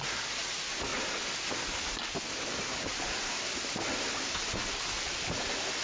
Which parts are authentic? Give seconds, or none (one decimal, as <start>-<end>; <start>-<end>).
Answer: 0.0-5.8

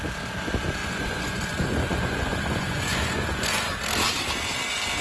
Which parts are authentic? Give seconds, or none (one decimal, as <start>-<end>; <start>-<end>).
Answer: 0.0-0.8; 3.8-5.0